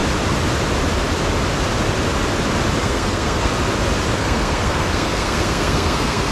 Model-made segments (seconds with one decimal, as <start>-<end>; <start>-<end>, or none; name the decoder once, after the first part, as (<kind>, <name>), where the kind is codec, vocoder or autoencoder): 2.8-3.5 (codec, SNAC); 4.2-6.3